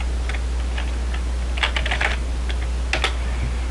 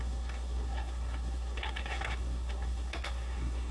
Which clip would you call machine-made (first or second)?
second